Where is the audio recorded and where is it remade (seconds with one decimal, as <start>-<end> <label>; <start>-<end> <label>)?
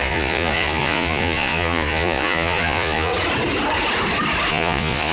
0.0-3.1 remade; 3.1-4.5 recorded; 4.5-5.1 remade